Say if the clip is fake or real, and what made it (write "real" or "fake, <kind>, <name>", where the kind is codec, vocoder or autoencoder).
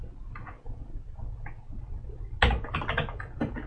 real